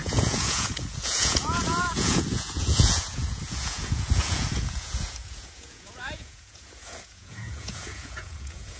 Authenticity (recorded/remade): remade